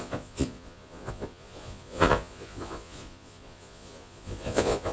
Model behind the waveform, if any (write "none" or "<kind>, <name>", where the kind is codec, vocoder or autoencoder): vocoder, Vocos